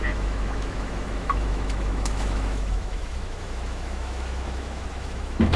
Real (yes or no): no